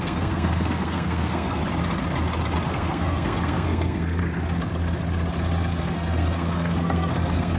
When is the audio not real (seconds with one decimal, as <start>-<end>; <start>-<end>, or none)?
0.0-1.6; 2.7-4.2; 5.8-7.6